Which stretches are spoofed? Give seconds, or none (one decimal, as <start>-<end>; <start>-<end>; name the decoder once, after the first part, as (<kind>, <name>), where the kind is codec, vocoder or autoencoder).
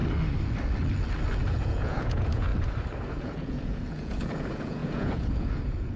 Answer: 1.5-2.5 (vocoder, Vocos); 3.1-6.0